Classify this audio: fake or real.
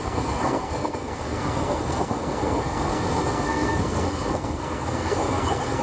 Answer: fake